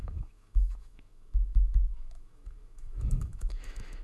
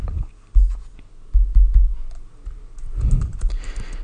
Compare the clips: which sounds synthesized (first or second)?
first